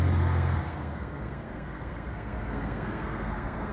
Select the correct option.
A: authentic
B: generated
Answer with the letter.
B